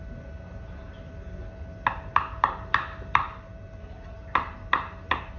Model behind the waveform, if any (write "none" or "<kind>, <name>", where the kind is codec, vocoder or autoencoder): none